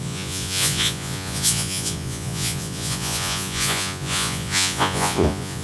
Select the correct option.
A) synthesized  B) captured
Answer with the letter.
A